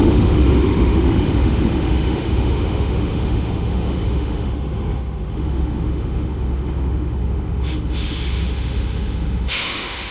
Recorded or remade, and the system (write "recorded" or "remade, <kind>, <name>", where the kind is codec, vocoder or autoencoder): remade, autoencoder, DAC-VAE